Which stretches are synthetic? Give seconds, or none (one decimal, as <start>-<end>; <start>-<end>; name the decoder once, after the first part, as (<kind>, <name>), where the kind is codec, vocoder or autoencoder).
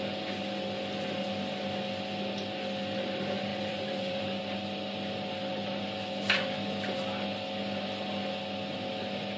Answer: 3.5-4.4 (vocoder, BigVGAN v2); 5.5-6.0